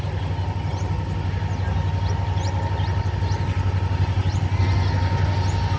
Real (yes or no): yes